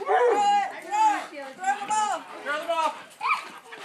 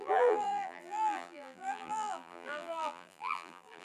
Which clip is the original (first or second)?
first